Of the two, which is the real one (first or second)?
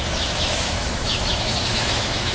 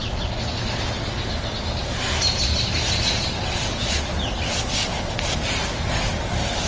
second